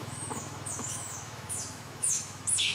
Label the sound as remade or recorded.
remade